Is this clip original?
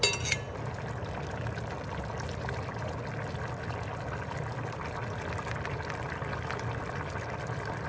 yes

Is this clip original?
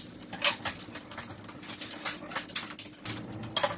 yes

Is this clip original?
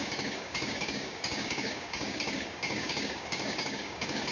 no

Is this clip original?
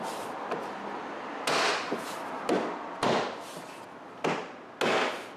yes